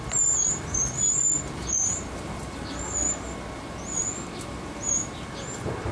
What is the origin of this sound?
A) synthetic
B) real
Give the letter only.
A